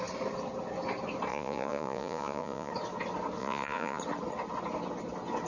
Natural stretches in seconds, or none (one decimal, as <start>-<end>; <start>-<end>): 0.0-1.3; 2.7-3.4; 4.0-5.5